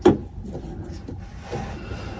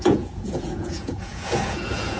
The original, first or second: first